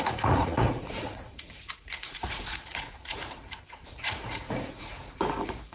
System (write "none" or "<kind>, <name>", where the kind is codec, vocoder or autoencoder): vocoder, Vocos